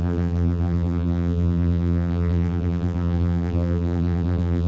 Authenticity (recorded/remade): remade